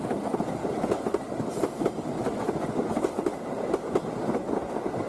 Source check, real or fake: real